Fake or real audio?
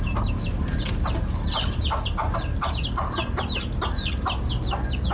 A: real